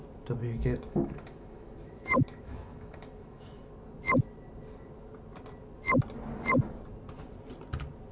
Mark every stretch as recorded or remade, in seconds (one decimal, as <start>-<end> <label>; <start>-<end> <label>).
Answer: 0.0-0.4 recorded; 0.4-3.7 remade; 3.7-8.1 recorded